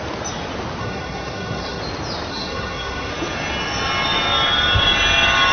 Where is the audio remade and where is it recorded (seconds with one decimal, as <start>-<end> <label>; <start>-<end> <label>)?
0.0-0.8 recorded; 0.8-1.8 remade; 1.8-2.3 recorded; 2.3-3.1 remade; 3.1-5.5 recorded